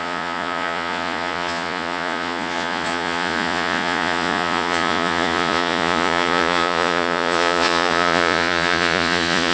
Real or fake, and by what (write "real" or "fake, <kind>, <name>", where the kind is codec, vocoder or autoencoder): fake, vocoder, Vocos